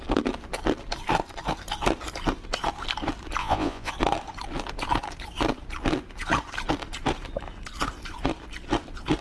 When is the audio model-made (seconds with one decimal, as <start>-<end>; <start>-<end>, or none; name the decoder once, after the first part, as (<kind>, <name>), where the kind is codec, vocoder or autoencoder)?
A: 3.4-3.9 (vocoder, Vocos)